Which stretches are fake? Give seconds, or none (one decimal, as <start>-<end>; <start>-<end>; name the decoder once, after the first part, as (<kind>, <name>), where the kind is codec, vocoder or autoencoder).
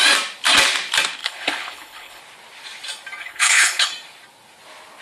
1.2-2.2 (codec, HILCodec); 3.2-3.9